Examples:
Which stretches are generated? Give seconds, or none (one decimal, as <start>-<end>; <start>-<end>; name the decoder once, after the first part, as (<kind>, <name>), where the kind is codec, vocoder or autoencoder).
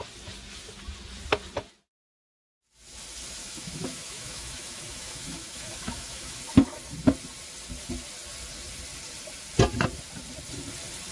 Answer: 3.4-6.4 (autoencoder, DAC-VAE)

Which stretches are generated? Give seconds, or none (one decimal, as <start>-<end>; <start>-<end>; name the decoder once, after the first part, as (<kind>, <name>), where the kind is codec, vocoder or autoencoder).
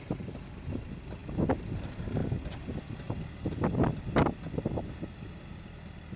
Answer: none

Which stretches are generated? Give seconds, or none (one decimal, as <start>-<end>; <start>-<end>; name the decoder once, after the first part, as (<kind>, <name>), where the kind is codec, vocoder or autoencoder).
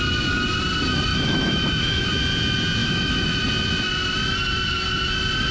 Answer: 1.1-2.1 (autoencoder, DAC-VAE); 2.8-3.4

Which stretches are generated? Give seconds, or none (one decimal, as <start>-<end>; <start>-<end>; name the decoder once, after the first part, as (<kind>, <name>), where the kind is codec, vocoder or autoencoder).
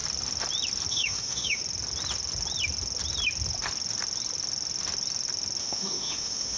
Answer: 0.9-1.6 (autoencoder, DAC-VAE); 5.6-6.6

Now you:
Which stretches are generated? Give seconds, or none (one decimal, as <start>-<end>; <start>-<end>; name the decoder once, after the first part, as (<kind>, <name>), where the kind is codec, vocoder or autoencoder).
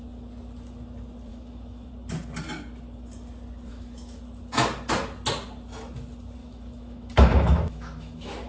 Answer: 1.3-1.9 (autoencoder, DAC-VAE); 3.7-4.2; 6.4-8.5